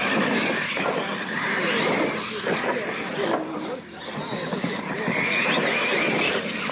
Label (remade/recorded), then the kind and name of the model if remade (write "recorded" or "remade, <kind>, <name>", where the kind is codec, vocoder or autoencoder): recorded